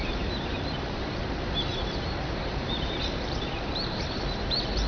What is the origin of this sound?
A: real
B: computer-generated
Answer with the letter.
B